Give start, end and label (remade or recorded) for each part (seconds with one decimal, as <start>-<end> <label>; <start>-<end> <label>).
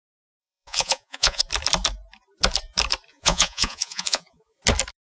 0.0-0.4 recorded; 0.4-1.4 remade; 1.4-3.1 recorded; 3.1-4.6 remade; 4.6-5.0 recorded